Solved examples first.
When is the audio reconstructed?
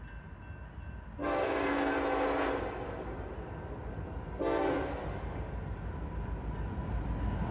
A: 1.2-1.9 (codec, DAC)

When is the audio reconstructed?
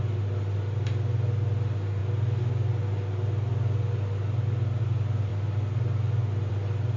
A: none